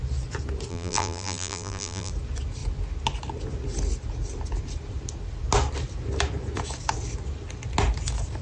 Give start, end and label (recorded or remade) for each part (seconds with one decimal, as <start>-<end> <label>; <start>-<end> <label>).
0.0-0.7 recorded; 0.7-2.1 remade; 2.1-8.4 recorded